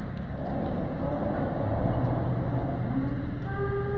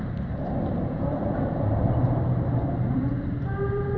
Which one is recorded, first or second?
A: first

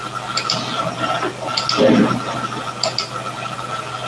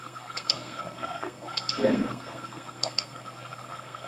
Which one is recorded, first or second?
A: first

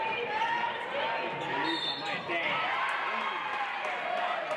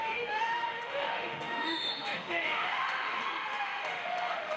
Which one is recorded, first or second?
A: first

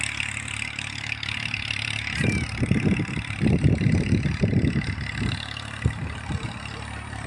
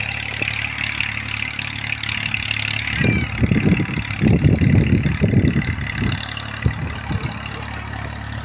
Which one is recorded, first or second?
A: second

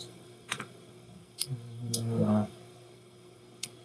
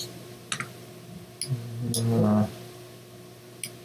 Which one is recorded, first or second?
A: second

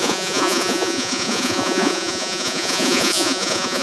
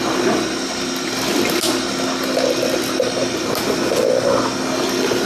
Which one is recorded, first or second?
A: second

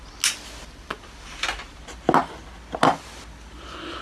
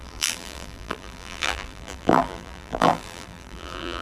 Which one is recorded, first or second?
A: first